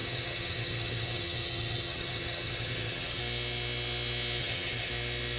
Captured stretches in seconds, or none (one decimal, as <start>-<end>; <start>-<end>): 3.2-4.4; 4.9-5.4